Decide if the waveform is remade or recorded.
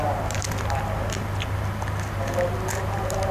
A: recorded